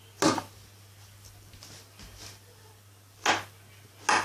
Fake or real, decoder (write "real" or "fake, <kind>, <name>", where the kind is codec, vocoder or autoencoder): real